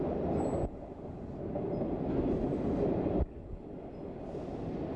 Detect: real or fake real